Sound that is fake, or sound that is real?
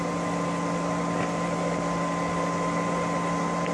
real